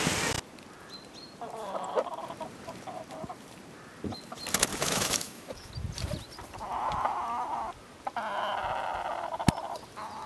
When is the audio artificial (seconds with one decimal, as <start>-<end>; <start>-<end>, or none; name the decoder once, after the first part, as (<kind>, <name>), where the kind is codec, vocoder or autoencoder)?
4.7-5.7 (autoencoder, DAC-VAE)